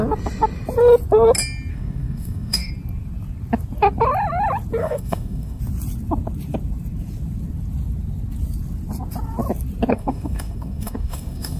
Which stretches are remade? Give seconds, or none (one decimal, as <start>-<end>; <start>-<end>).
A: 1.7-2.7; 4.8-5.6; 9.9-11.6